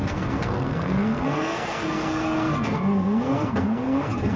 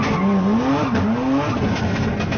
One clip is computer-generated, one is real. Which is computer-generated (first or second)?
first